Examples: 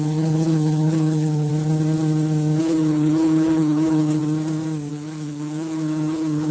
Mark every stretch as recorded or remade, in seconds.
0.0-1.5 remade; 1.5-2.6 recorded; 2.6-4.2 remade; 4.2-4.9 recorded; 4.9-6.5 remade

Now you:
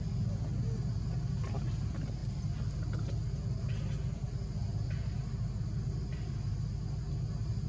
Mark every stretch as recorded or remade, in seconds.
0.0-7.7 recorded

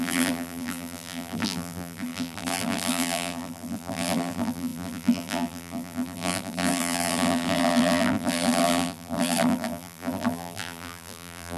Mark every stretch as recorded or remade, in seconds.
0.0-11.6 remade

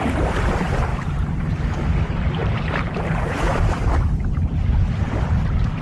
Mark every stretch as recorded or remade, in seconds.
0.0-2.4 recorded; 2.4-3.3 remade; 3.3-5.8 recorded

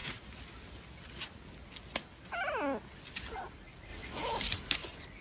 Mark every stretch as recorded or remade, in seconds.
0.0-5.2 recorded

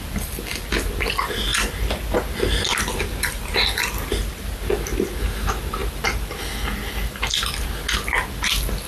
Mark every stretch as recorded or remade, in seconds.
0.0-8.9 recorded

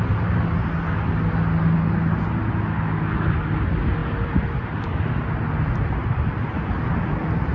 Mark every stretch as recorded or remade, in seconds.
0.0-4.0 recorded; 4.0-4.9 remade; 4.9-6.0 recorded; 6.0-7.5 remade

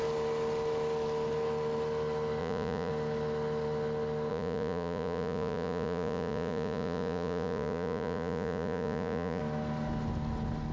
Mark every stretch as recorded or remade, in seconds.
0.0-2.4 recorded; 2.4-2.9 remade; 2.9-4.3 recorded; 4.3-9.4 remade; 9.4-10.7 recorded